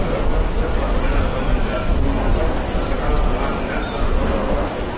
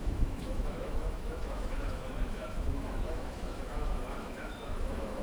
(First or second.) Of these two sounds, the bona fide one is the first